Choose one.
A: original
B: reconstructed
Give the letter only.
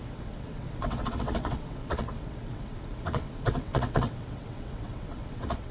B